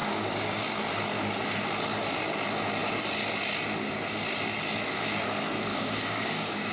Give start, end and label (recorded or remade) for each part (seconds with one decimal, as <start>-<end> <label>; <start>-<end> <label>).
0.0-0.8 remade; 0.8-5.7 recorded; 5.7-6.7 remade